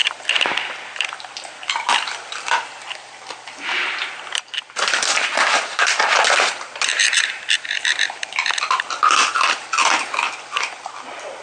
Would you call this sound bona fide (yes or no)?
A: no